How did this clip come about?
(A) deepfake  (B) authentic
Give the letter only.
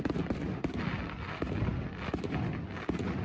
B